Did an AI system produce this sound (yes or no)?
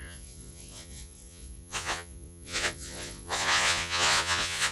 yes